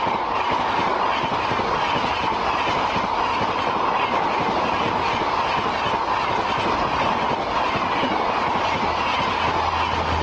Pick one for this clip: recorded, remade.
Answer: recorded